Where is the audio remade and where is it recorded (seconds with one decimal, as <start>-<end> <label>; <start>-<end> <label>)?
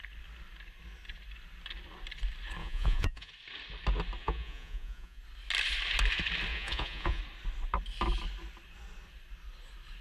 0.0-2.6 recorded; 2.6-3.3 remade; 3.3-4.2 recorded; 4.2-5.2 remade; 5.2-6.5 recorded; 6.5-7.2 remade; 7.2-10.0 recorded